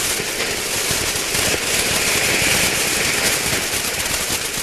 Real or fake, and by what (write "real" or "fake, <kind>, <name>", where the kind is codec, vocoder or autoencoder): real